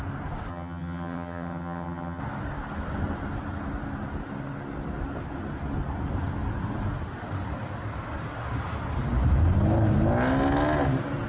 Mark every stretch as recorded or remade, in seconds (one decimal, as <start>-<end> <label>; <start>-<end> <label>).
0.0-0.5 recorded; 0.5-2.2 remade; 2.2-11.3 recorded